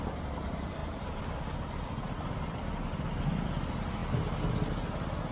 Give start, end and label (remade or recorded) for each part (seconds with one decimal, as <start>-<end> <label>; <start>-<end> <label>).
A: 0.0-5.3 recorded